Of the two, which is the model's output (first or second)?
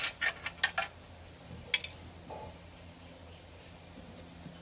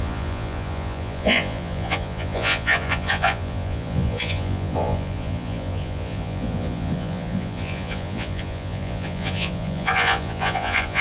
second